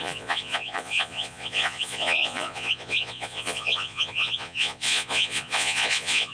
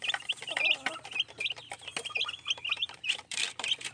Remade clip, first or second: first